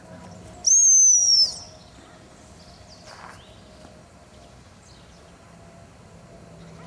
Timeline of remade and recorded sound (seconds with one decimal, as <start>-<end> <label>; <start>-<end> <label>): 0.0-6.9 recorded